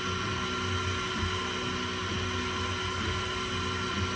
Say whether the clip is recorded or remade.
recorded